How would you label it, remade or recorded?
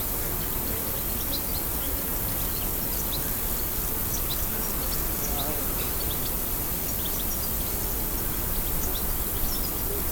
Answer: recorded